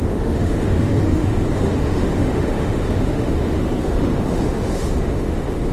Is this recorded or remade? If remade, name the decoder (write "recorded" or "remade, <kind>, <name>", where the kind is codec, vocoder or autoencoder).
remade, autoencoder, DAC-VAE